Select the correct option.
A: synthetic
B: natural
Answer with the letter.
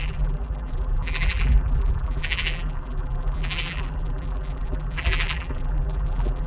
A